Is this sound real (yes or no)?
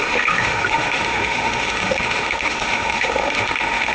no